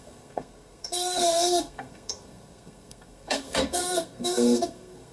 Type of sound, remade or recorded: remade